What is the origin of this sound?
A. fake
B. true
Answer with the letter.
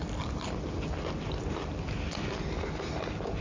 B